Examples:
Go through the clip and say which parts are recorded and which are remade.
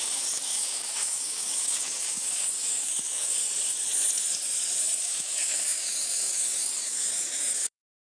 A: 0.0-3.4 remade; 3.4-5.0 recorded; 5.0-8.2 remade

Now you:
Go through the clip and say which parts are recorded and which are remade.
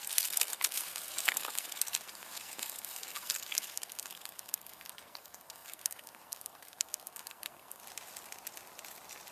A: 0.0-7.8 remade; 7.8-9.3 recorded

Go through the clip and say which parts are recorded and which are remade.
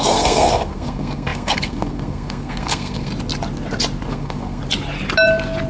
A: 0.0-3.1 remade; 3.1-4.1 recorded; 4.1-4.6 remade; 4.6-5.7 recorded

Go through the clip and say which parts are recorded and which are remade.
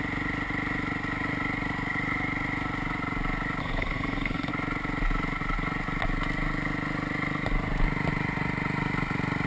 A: 0.0-3.6 recorded; 3.6-4.5 remade; 4.5-9.5 recorded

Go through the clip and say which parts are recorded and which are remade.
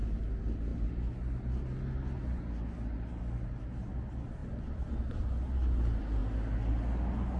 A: 0.0-7.4 recorded